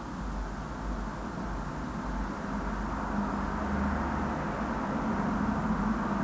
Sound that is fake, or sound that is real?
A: real